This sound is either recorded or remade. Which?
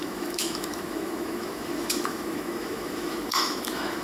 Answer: remade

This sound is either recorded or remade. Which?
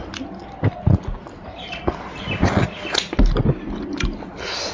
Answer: recorded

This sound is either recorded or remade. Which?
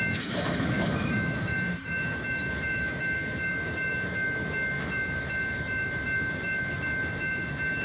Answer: remade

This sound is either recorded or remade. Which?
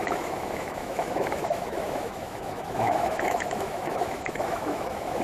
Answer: remade